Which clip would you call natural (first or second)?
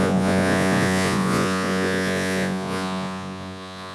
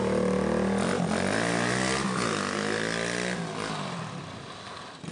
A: second